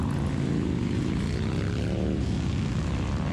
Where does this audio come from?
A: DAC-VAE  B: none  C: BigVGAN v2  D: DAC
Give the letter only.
B